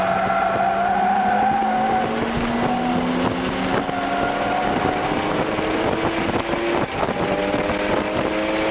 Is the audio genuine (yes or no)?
yes